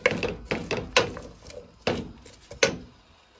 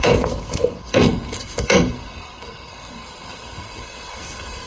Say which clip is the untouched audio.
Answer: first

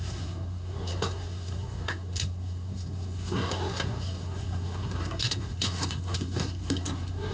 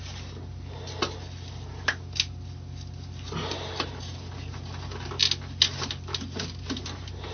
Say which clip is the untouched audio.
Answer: second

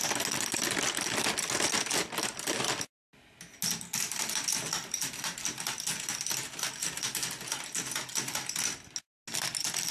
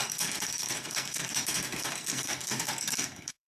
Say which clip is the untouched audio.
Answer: first